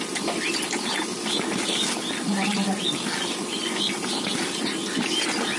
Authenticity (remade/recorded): recorded